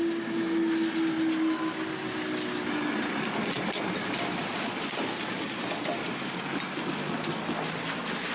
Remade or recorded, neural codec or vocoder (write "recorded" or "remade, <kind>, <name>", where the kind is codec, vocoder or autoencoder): recorded